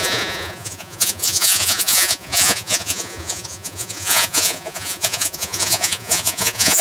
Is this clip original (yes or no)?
no